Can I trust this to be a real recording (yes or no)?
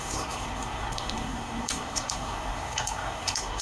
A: no